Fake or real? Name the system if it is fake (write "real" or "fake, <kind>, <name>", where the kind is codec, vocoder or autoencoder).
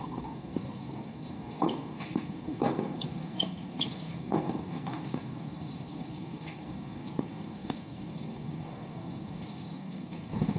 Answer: fake, codec, SNAC